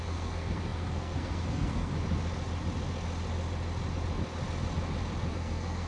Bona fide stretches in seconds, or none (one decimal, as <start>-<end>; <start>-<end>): 1.9-5.3